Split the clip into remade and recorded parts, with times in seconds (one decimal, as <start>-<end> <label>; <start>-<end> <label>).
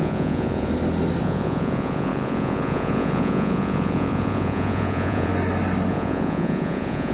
0.0-0.7 remade; 0.7-1.2 recorded; 1.2-5.3 remade; 5.3-5.9 recorded; 5.9-7.1 remade